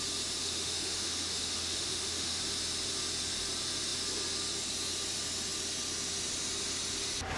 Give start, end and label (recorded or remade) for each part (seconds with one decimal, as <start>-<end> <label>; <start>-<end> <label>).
0.0-0.4 recorded; 0.4-2.4 remade; 2.4-7.4 recorded